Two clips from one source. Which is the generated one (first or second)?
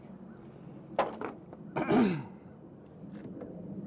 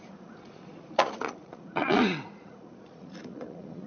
second